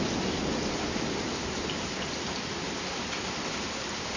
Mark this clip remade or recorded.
recorded